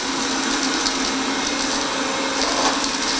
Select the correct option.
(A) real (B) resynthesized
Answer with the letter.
A